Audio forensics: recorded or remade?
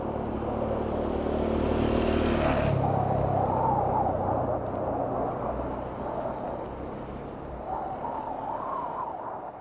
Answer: recorded